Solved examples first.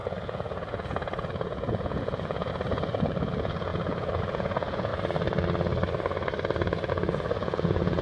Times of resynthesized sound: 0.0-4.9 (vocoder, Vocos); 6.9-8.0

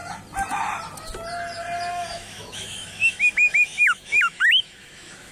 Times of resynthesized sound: 1.9-5.3 (autoencoder, DAC-VAE)